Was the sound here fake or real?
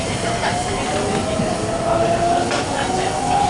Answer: real